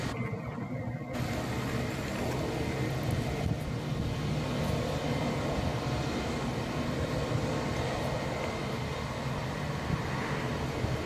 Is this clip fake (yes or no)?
no